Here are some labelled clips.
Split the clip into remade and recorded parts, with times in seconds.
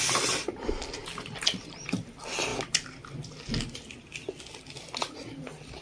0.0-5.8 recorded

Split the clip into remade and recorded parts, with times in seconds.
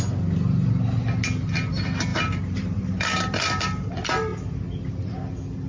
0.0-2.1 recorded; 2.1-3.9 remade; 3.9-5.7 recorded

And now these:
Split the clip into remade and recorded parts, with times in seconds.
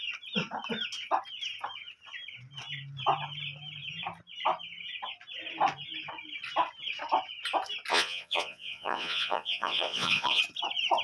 0.0-7.9 recorded; 7.9-10.4 remade; 10.4-11.0 recorded